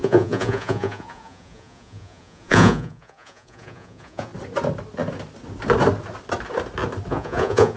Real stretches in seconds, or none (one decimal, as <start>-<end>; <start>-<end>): 4.3-7.1